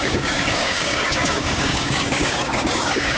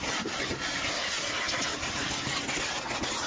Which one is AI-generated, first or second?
first